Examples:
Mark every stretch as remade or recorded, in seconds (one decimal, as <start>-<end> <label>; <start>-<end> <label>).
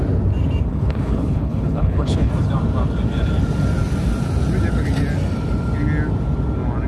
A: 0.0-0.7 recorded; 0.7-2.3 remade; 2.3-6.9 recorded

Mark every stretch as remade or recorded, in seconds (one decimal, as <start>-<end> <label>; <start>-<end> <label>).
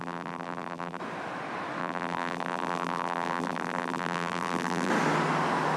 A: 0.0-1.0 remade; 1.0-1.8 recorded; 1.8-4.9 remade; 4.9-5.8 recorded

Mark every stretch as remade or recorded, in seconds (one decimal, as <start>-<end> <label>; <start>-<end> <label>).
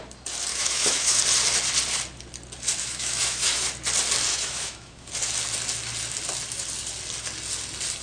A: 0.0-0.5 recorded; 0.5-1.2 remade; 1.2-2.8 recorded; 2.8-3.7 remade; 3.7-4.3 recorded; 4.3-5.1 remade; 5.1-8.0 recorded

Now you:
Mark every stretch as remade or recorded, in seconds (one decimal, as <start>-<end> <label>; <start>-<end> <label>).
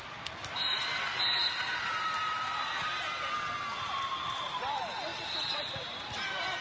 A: 0.0-1.4 recorded; 1.4-3.3 remade; 3.3-5.1 recorded; 5.1-6.6 remade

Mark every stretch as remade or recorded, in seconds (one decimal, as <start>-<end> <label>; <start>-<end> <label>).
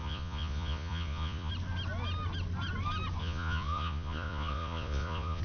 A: 0.0-1.5 remade; 1.5-3.2 recorded; 3.2-5.4 remade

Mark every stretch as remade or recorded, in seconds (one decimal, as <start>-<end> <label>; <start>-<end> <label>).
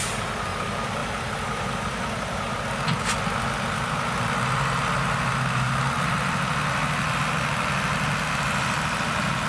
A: 0.0-9.5 recorded